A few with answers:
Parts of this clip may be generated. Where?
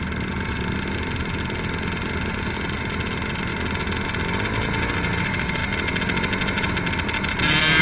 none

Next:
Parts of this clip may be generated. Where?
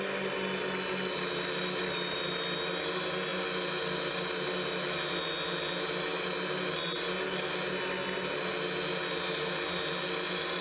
none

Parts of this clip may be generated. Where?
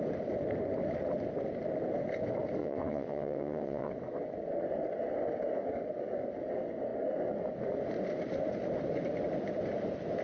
2.6-3.9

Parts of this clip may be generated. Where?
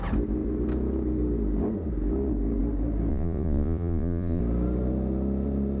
3.1-4.4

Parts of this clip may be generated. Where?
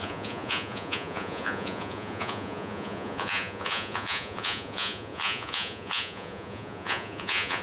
0.0-7.6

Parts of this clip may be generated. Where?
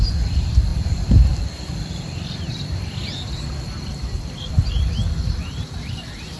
0.0-6.4